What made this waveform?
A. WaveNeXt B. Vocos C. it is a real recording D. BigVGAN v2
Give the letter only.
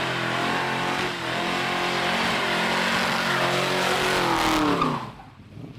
C